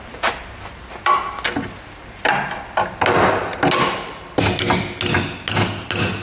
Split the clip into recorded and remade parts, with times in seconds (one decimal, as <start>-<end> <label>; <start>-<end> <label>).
0.0-6.2 recorded